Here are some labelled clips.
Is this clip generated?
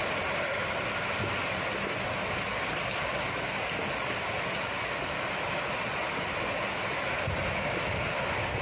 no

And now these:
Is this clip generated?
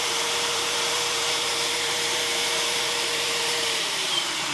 yes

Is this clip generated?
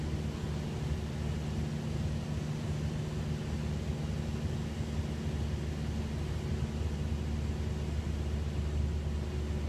no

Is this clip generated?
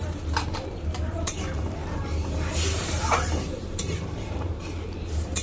yes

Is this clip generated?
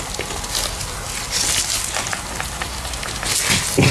no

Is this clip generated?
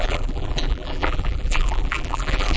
yes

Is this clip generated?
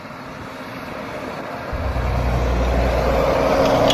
no